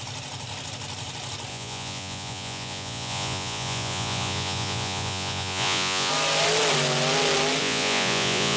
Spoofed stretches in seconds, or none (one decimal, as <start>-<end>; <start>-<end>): 1.5-6.1; 7.6-8.6